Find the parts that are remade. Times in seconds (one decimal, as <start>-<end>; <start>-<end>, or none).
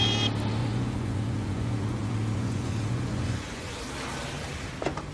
0.6-3.7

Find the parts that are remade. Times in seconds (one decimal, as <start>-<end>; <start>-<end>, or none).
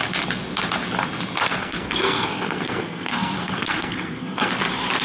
1.5-4.5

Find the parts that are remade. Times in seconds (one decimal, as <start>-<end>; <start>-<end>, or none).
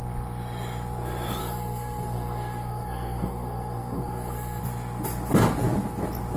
1.4-4.6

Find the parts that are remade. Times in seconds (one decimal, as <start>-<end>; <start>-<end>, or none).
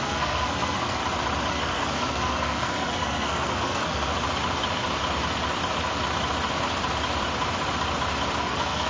0.0-1.0; 1.5-4.1; 8.4-8.9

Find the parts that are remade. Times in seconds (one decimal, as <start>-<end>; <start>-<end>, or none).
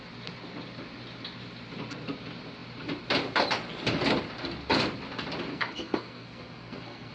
5.5-7.1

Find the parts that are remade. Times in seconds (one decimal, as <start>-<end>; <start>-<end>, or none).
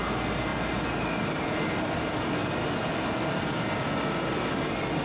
none